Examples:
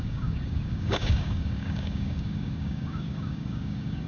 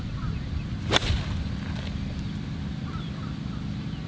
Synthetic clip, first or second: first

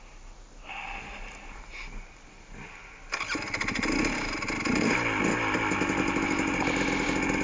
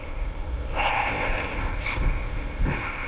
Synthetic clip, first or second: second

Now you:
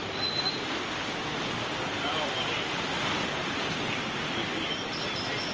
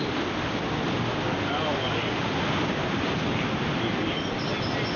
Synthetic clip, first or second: first